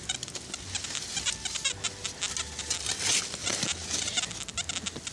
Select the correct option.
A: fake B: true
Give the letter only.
B